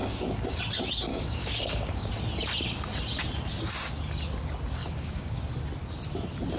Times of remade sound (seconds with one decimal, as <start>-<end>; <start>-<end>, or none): 0.0-0.6; 1.1-2.1; 4.8-5.4